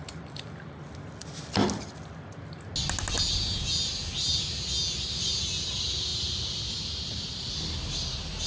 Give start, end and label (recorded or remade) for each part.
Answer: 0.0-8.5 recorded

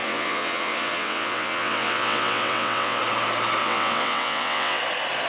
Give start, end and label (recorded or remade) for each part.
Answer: 0.0-3.0 remade; 3.0-3.6 recorded; 3.6-4.8 remade; 4.8-5.3 recorded